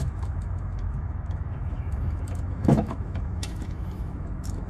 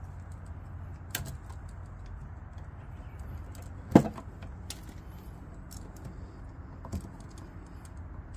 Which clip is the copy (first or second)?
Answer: first